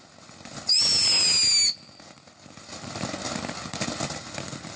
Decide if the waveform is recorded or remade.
recorded